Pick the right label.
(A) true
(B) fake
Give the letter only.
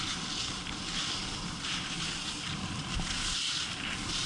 A